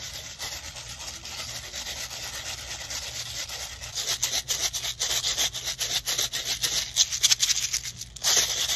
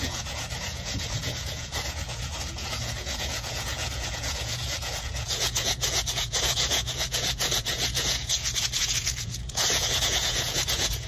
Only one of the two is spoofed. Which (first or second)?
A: second